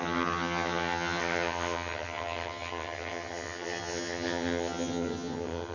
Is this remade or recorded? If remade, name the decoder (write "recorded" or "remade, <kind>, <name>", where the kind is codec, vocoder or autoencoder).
remade, vocoder, HiFi-GAN